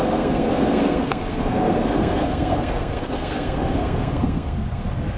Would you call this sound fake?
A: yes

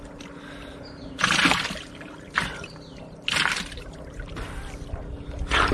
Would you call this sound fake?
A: no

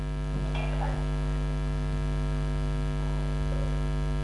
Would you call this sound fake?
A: no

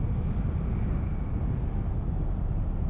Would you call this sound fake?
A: no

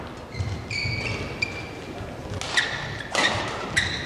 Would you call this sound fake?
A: no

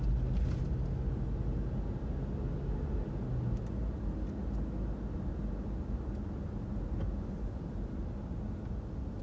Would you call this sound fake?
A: no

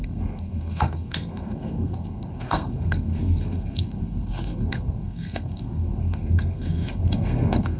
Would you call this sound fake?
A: yes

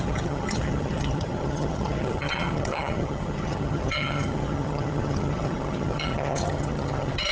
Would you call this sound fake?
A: yes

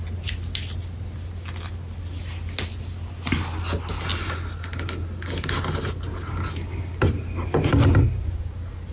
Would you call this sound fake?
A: no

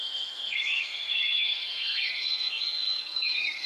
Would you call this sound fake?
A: yes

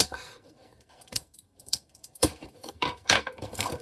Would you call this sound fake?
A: yes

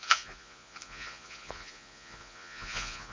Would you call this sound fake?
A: yes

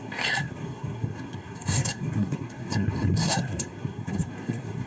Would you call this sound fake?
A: yes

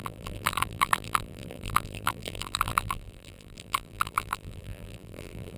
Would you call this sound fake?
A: yes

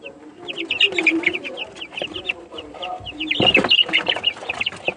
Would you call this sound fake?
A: no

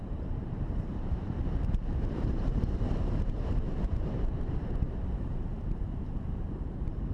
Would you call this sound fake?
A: yes